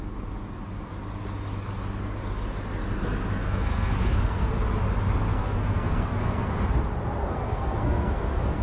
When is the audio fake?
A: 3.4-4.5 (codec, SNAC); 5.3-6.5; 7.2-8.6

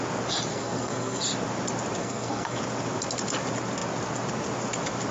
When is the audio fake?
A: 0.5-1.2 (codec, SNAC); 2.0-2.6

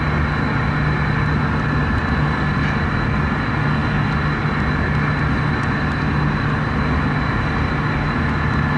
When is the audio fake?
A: none

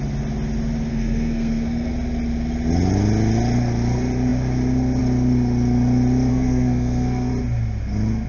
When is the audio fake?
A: 0.9-1.9 (codec, SNAC); 6.3-7.3

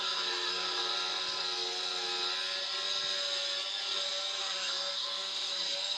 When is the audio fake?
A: 0.0-0.8 (codec, SNAC); 4.4-6.0

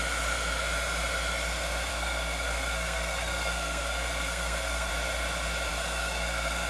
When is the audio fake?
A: 1.9-4.9 (codec, SNAC); 5.7-6.7